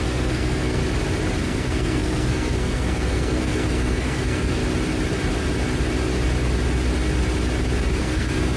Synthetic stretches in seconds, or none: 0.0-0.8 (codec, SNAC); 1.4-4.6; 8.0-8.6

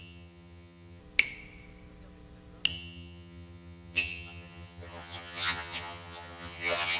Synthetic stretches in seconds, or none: 0.0-1.0 (vocoder, HiFi-GAN); 2.7-7.0